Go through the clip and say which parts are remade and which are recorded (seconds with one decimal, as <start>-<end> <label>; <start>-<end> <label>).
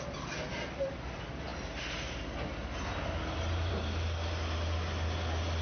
0.0-5.6 recorded